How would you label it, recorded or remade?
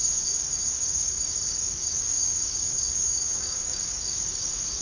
remade